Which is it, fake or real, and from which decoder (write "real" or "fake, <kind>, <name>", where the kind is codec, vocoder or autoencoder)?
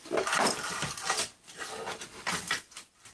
real